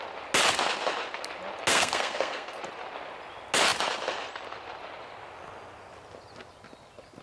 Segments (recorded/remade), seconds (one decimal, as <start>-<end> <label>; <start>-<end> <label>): 0.0-1.7 recorded; 1.7-2.6 remade; 2.6-7.2 recorded